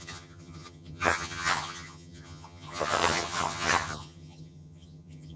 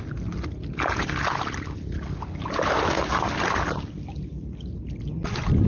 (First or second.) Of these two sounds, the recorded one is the second